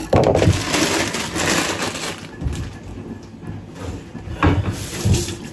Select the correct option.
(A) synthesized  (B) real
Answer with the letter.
B